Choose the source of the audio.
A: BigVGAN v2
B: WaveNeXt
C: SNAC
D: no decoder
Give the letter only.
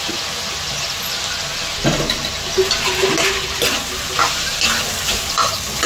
D